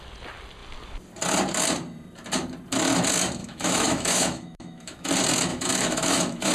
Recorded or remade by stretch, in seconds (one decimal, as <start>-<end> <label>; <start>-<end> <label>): 0.0-3.4 recorded; 3.4-5.1 remade; 5.1-5.5 recorded; 5.5-6.5 remade